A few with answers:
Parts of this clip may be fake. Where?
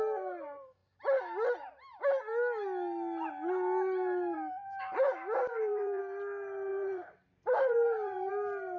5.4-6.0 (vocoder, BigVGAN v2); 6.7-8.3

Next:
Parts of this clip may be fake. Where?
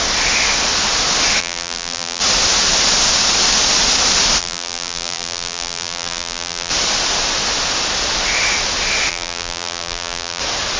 1.4-2.2 (vocoder, BigVGAN v2); 4.4-6.7; 9.1-10.4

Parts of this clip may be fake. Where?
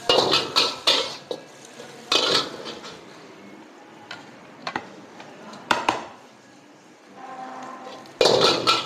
4.6-6.3 (vocoder, BigVGAN v2)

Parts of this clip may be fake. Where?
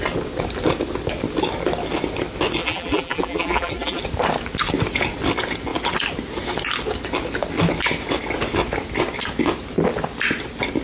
2.6-4.0 (vocoder, BigVGAN v2)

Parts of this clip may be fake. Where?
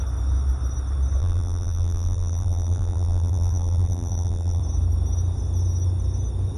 1.2-4.6 (vocoder, BigVGAN v2)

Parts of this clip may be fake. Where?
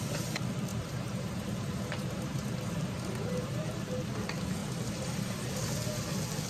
0.7-3.7 (vocoder, BigVGAN v2); 4.6-5.5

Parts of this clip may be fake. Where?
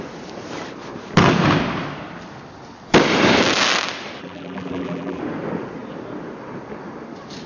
4.2-5.2 (vocoder, BigVGAN v2)